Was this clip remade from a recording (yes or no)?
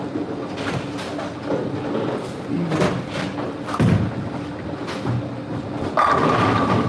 no